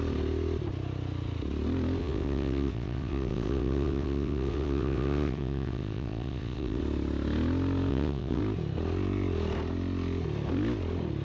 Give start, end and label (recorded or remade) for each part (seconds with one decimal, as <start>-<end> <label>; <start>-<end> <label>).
0.0-2.0 recorded; 2.0-6.8 remade; 6.8-7.9 recorded; 7.9-8.4 remade; 8.4-11.2 recorded